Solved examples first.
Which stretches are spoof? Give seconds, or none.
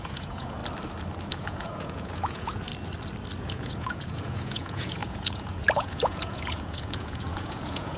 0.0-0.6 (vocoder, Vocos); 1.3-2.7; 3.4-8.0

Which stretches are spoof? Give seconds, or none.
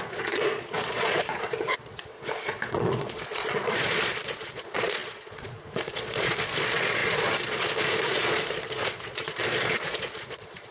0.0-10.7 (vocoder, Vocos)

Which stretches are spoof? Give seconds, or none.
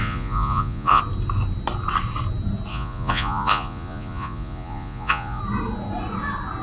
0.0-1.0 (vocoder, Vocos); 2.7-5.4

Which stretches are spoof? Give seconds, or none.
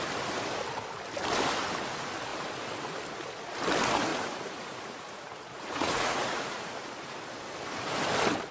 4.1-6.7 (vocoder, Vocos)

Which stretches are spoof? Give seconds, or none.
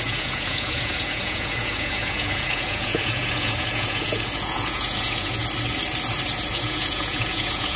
0.0-5.4 (vocoder, Vocos); 6.5-7.8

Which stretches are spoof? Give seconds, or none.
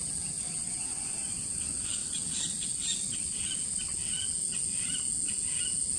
0.6-1.6 (vocoder, Vocos)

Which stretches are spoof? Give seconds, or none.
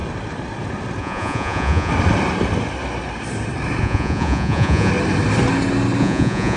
1.0-1.9 (vocoder, Vocos); 3.8-4.9; 6.0-6.6